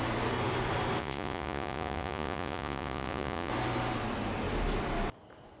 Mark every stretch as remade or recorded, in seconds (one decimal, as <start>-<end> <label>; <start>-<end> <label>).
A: 0.0-1.0 recorded; 1.0-3.5 remade; 3.5-5.6 recorded